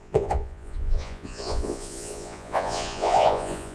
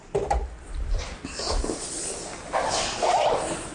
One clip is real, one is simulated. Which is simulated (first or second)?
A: first